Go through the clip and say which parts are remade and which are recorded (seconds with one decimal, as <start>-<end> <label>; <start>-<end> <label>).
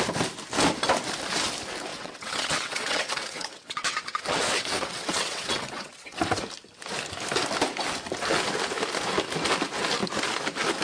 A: 0.0-1.9 recorded; 1.9-6.2 remade; 6.2-10.8 recorded